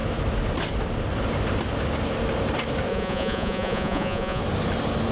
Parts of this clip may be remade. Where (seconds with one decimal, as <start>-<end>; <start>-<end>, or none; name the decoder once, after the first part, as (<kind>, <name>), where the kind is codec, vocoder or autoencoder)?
2.9-4.4 (vocoder, Vocos)